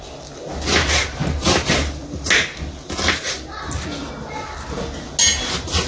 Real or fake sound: real